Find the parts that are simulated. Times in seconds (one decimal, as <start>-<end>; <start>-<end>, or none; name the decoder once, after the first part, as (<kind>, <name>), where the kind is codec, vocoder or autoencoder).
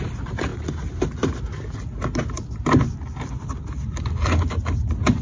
none